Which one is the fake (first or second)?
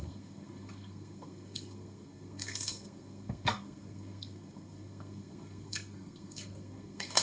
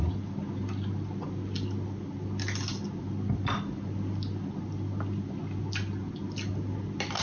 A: first